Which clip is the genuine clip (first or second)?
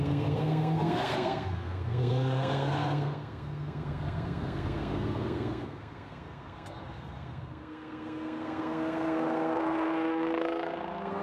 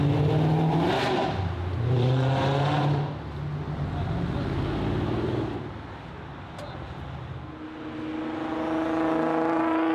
second